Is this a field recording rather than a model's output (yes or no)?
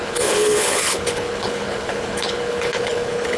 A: no